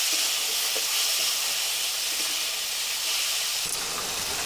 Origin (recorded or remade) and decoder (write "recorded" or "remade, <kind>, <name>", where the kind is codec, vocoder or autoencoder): recorded